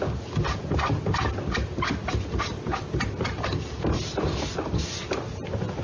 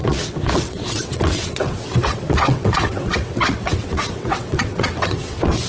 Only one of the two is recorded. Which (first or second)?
first